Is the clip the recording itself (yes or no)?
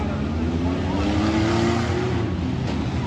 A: yes